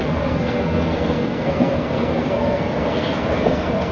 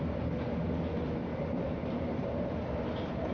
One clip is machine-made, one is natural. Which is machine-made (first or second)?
first